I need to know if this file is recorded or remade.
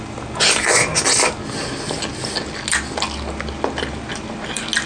recorded